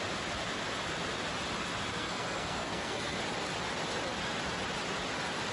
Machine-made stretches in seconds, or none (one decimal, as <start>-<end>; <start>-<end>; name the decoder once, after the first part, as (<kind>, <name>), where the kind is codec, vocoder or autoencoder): 1.9-3.2 (codec, SNAC)